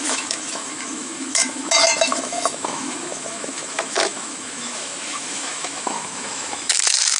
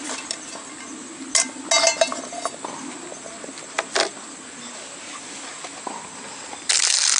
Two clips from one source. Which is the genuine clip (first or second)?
second